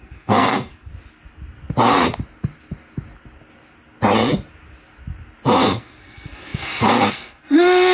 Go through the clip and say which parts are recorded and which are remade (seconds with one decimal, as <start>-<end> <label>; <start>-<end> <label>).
0.0-0.9 remade; 0.9-5.6 recorded; 5.6-7.9 remade